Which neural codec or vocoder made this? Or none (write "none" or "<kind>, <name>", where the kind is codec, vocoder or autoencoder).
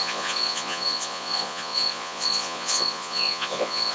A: vocoder, Vocos